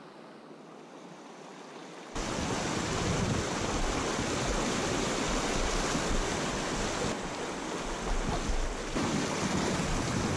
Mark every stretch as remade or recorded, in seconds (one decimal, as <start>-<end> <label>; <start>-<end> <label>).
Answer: 0.0-10.4 recorded